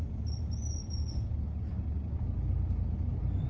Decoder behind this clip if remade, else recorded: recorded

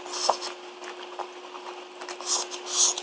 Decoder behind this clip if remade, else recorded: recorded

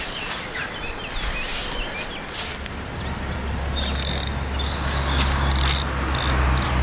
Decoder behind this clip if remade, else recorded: recorded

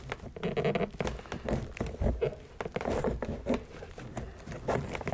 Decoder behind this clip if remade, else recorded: recorded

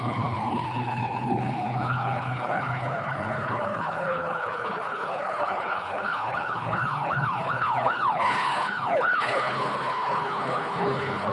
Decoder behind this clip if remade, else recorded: remade, codec, HILCodec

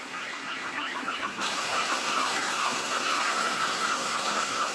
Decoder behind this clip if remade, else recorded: remade, codec, SNAC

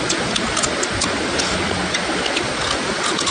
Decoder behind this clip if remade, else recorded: recorded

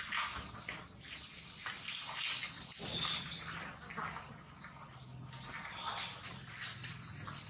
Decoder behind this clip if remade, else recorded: recorded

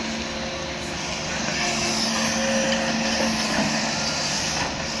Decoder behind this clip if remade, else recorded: recorded